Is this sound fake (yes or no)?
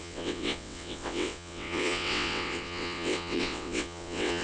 yes